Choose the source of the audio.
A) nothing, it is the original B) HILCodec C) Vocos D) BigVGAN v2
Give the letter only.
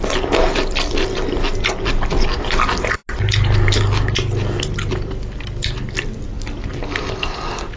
A